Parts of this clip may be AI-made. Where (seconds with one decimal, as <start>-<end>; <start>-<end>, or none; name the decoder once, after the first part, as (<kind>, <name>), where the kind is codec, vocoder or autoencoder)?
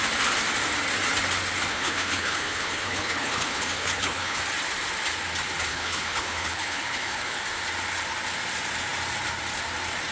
1.7-4.4 (codec, HILCodec); 5.7-7.4